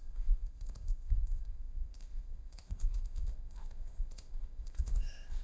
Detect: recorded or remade remade